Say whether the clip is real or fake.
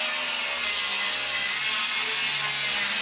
real